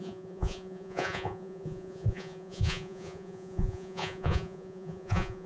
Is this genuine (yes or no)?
no